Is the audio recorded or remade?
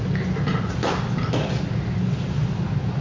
recorded